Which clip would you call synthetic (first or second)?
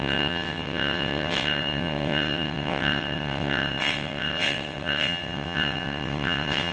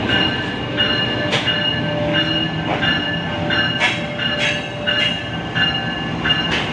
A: first